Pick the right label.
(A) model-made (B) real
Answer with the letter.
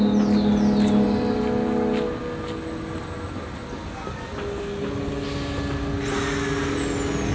B